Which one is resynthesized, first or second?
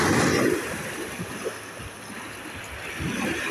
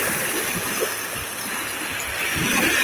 first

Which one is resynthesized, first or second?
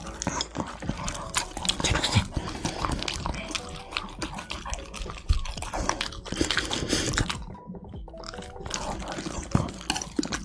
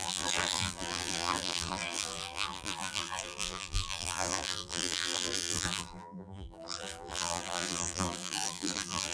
second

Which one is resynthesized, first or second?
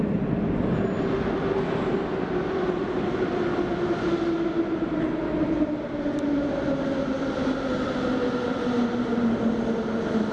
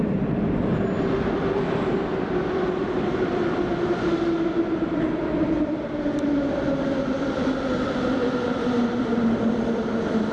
second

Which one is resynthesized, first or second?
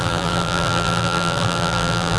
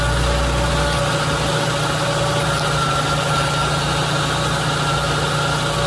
first